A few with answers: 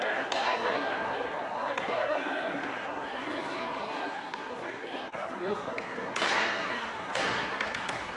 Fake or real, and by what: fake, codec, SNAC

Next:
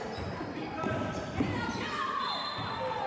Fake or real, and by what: real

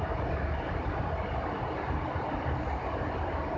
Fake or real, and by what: real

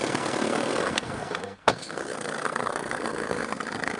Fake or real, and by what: fake, codec, SNAC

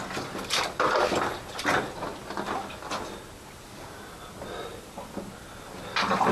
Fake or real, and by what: real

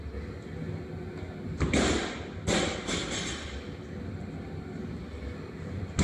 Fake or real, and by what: real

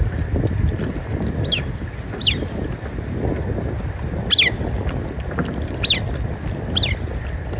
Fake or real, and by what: real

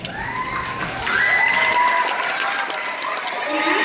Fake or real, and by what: real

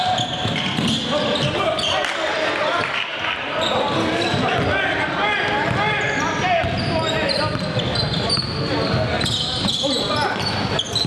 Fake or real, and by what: real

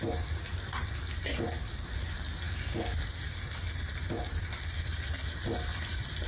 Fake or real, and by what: real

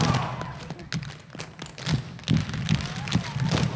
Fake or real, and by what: real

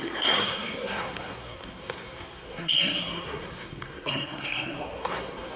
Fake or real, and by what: fake, codec, SNAC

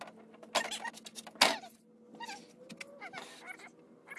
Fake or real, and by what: real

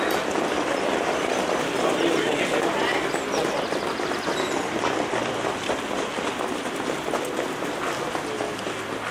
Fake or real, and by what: real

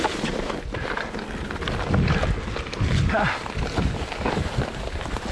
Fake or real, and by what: real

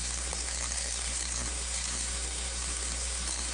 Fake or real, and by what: fake, codec, SNAC